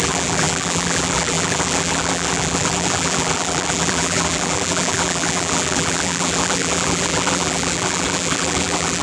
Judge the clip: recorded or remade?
remade